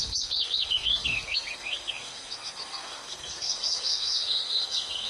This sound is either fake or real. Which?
fake